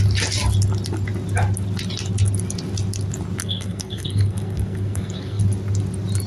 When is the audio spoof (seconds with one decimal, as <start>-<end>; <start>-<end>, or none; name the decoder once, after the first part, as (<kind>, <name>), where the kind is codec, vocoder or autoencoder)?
3.4-5.4 (codec, SNAC)